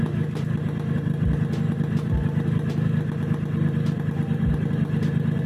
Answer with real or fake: real